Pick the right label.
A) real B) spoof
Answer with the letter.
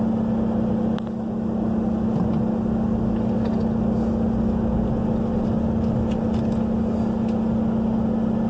A